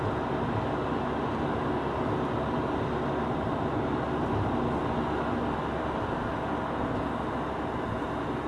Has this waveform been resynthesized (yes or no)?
no